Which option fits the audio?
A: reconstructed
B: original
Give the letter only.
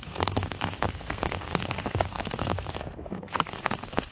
A